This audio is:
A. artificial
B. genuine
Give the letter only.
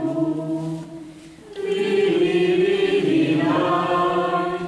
B